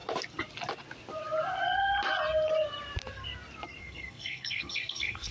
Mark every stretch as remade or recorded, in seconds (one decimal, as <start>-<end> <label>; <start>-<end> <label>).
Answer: 0.0-3.8 recorded; 3.8-5.3 remade